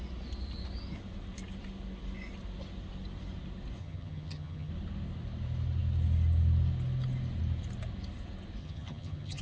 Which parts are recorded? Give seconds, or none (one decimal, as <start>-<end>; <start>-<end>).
0.0-3.8; 4.7-8.6